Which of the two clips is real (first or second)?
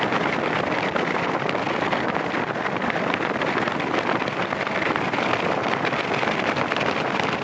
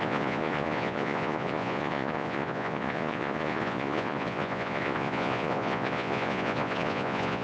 first